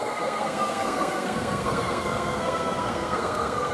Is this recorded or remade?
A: remade